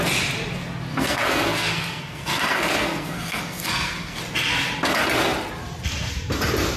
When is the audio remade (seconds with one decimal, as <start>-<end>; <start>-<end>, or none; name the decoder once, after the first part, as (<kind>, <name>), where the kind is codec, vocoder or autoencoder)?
0.9-4.2 (codec, SNAC)